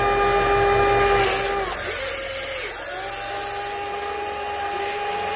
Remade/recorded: recorded